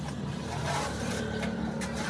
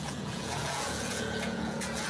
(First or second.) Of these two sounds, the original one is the first